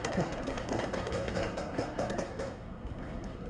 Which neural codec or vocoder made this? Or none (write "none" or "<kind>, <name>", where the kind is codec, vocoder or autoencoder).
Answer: codec, SNAC